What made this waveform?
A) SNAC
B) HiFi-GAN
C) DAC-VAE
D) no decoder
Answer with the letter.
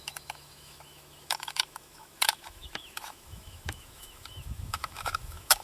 C